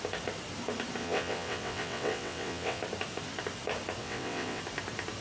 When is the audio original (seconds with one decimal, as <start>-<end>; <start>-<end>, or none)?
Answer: 0.0-1.0; 2.8-4.0; 4.6-5.2

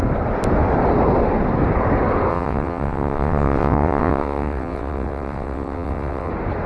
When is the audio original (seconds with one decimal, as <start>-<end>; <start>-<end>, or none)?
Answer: 0.0-2.3; 6.3-6.7

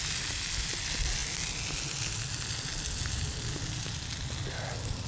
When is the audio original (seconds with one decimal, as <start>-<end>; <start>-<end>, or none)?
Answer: 0.0-5.1

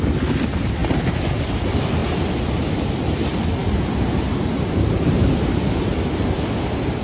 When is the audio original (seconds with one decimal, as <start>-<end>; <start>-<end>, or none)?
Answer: 0.0-7.0

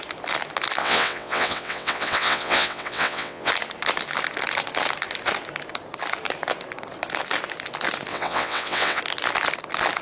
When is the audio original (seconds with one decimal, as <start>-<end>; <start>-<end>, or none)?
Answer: 0.0-0.8; 3.5-8.1; 9.0-10.0

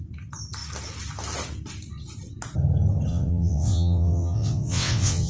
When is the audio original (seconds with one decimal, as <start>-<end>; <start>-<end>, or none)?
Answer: 0.0-3.1

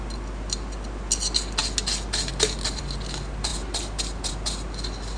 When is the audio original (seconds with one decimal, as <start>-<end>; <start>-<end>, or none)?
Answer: 0.0-5.2